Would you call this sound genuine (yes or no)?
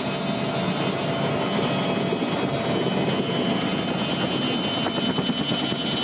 yes